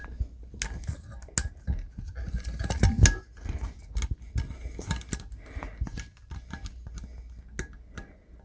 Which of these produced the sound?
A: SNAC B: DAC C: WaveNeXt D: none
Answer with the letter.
D